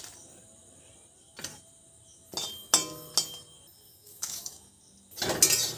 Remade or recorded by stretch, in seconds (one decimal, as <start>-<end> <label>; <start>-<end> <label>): 0.0-3.9 recorded; 3.9-4.8 remade; 4.8-5.8 recorded